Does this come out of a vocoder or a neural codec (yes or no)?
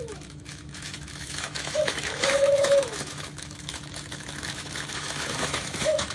yes